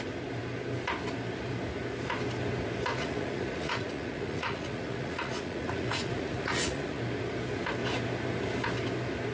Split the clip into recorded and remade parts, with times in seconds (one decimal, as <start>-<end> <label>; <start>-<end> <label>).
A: 0.0-3.0 recorded; 3.0-7.0 remade; 7.0-9.3 recorded